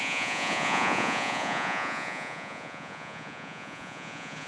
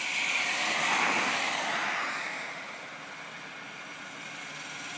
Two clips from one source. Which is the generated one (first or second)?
first